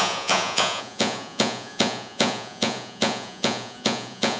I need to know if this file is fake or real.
fake